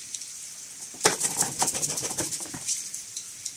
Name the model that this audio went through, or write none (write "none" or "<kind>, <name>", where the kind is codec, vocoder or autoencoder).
none